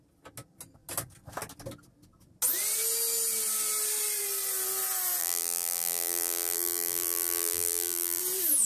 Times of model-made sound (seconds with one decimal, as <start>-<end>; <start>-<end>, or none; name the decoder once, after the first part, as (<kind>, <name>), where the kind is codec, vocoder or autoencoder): 5.2-8.2 (vocoder, BigVGAN v2)